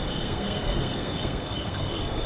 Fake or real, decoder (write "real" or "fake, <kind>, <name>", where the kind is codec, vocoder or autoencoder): fake, codec, SNAC